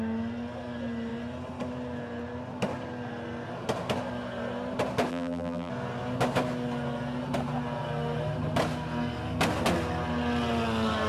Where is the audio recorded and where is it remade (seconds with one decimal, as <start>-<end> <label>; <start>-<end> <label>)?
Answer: 0.0-5.1 recorded; 5.1-5.7 remade; 5.7-11.1 recorded